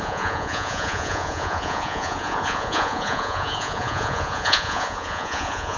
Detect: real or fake fake